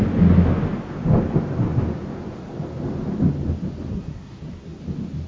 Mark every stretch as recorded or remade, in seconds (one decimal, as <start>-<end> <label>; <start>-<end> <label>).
0.0-3.9 recorded; 3.9-4.8 remade; 4.8-5.3 recorded